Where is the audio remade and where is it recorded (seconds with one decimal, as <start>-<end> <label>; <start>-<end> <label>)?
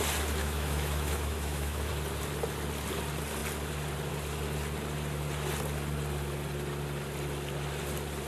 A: 0.0-0.4 recorded; 0.4-1.9 remade; 1.9-8.3 recorded